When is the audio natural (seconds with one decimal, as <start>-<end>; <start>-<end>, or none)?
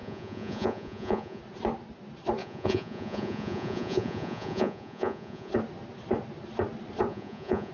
1.4-2.4; 5.5-7.1